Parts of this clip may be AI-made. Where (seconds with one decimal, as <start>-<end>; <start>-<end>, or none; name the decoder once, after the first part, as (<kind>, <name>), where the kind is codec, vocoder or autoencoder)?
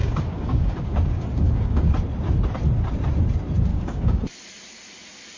0.0-1.9 (codec, DAC); 3.7-4.2